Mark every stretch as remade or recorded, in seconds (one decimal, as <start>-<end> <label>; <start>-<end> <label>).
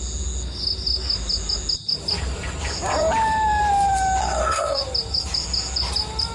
0.0-4.2 recorded; 4.2-4.8 remade; 4.8-6.3 recorded